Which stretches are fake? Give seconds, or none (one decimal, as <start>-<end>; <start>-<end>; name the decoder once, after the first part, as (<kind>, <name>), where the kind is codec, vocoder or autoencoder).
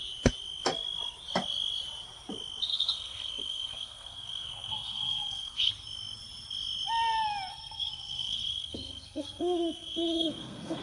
2.7-5.7 (codec, SNAC); 7.5-10.8